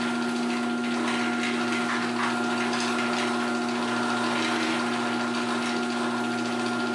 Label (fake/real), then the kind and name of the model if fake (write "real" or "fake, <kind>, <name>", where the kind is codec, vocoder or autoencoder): real